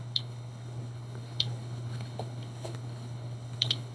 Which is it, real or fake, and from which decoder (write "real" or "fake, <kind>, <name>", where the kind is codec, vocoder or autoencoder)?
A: fake, codec, HILCodec